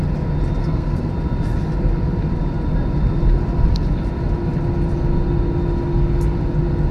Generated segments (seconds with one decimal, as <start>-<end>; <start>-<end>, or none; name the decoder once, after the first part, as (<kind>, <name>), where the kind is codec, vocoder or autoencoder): 0.6-1.1 (codec, SNAC)

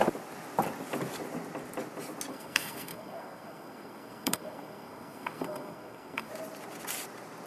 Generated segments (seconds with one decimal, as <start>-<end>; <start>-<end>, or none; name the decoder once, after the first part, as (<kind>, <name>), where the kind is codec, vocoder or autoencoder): 2.3-6.3 (codec, SNAC)

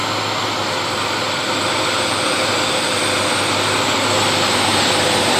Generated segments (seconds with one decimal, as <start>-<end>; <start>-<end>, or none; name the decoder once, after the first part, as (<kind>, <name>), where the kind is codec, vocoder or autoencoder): none

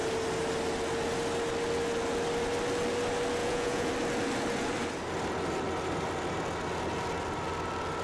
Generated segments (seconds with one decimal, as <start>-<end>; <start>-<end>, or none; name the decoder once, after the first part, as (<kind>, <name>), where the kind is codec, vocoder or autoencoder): 3.4-3.9 (vocoder, Vocos)

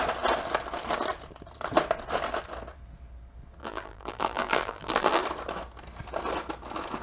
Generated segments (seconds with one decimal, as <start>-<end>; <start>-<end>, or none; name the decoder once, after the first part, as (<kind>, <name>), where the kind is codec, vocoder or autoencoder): 3.6-5.2 (vocoder, BigVGAN v2)

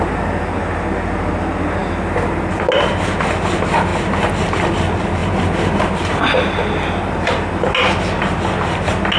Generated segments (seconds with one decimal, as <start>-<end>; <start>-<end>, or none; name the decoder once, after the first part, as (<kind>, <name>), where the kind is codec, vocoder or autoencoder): none

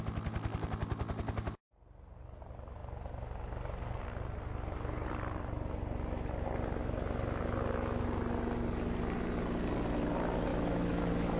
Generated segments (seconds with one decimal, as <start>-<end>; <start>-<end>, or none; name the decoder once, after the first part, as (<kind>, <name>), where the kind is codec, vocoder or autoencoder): 10.5-11.4 (autoencoder, DAC-VAE)